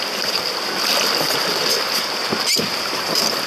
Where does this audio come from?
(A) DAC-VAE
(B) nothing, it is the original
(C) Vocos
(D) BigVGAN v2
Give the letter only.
B